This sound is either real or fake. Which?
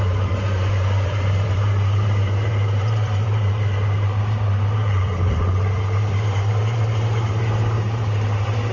fake